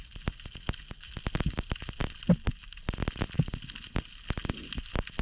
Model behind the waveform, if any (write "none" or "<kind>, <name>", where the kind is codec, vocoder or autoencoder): none